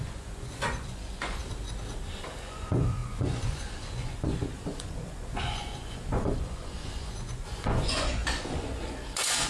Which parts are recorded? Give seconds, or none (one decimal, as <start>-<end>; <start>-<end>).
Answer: 1.4-2.4